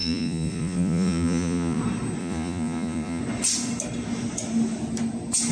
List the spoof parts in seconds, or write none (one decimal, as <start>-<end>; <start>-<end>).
0.0-1.8; 2.2-3.2